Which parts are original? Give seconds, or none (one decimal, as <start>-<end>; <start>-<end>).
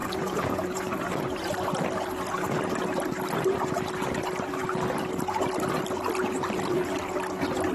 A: 1.2-7.7